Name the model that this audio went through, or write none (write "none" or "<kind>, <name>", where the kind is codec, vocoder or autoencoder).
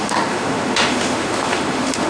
autoencoder, DAC-VAE